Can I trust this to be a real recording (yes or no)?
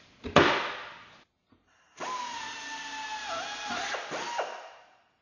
yes